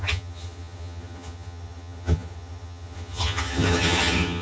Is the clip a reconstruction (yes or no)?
yes